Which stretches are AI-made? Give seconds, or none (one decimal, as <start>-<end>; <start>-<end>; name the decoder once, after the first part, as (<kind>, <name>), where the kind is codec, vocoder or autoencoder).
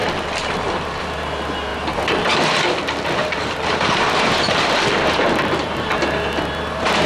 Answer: 0.0-1.0 (vocoder, BigVGAN v2); 1.7-5.9